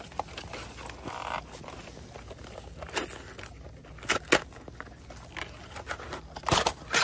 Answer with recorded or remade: recorded